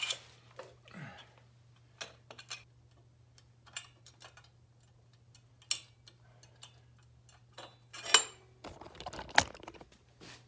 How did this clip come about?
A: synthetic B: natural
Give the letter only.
B